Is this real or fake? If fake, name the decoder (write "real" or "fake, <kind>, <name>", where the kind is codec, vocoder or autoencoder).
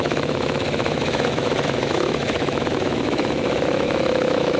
fake, autoencoder, DAC-VAE